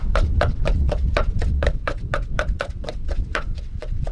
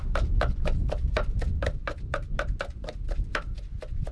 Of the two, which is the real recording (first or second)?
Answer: second